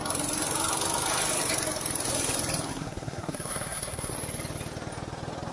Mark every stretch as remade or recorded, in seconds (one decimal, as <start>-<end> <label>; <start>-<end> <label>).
0.0-2.7 recorded; 2.7-4.1 remade; 4.1-5.5 recorded